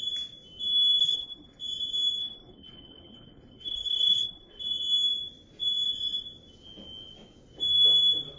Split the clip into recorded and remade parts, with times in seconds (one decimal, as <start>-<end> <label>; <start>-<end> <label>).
0.0-1.0 recorded; 1.0-1.6 remade; 1.6-2.2 recorded; 2.2-4.6 remade; 4.6-8.4 recorded